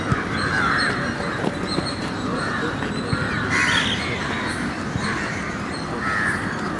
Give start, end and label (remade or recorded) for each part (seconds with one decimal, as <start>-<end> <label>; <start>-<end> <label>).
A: 0.0-6.8 recorded

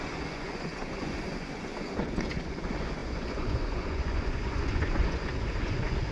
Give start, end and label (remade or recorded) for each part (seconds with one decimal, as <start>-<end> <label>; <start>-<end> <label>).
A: 0.0-6.1 remade

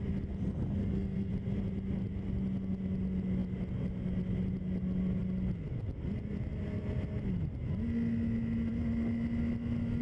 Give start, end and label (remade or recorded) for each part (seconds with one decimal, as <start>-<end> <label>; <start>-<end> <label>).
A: 0.0-0.8 recorded; 0.8-1.3 remade; 1.3-10.0 recorded

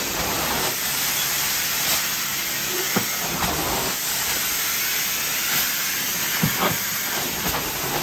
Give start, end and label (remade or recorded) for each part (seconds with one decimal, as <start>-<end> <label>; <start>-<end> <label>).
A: 0.0-1.9 remade; 1.9-6.7 recorded; 6.7-8.0 remade

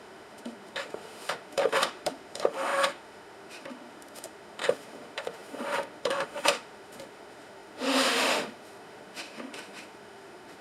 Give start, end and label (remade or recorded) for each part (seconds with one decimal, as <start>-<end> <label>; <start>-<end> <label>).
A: 0.0-10.6 remade